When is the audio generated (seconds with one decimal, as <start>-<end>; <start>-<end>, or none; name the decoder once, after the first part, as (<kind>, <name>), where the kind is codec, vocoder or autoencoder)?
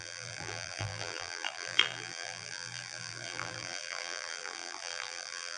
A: 0.0-5.6 (vocoder, BigVGAN v2)